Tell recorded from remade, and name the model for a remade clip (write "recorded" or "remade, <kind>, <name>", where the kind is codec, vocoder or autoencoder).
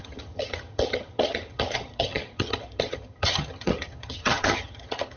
remade, vocoder, HiFi-GAN